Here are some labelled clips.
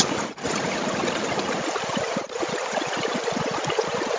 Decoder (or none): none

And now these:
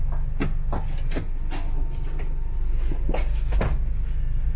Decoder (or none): none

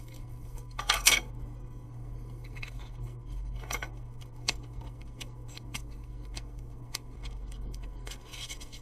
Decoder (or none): codec, SNAC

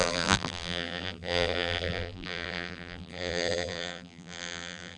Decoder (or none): vocoder, BigVGAN v2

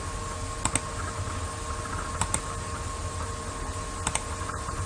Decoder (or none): none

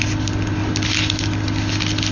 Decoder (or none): none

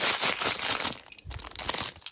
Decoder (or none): none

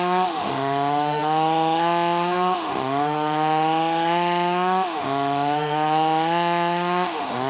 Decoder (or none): autoencoder, DAC-VAE